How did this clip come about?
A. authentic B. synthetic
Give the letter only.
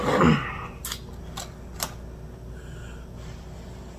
A